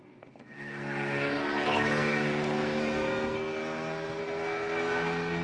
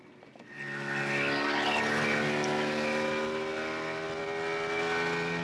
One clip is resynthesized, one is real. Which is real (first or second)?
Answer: second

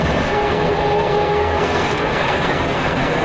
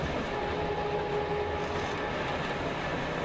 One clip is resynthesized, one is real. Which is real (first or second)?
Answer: second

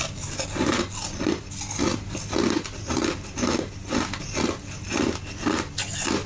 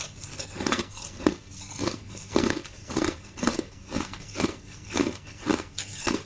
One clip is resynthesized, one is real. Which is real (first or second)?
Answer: first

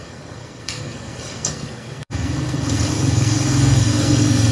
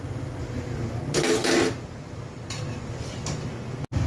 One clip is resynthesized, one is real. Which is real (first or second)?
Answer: second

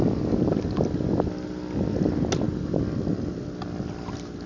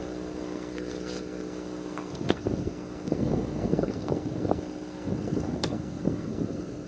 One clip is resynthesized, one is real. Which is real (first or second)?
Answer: first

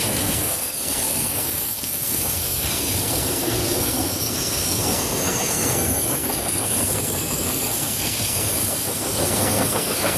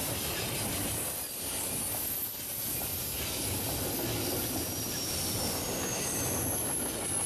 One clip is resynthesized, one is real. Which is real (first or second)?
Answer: second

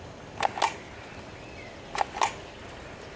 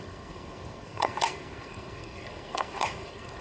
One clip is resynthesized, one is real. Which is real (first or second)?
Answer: first